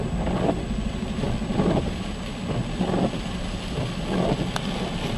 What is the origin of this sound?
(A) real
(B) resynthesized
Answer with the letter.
A